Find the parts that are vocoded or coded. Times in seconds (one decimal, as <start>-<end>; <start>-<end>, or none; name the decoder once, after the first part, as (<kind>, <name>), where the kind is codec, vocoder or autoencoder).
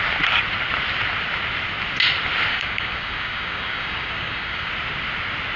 2.5-4.7 (codec, DAC)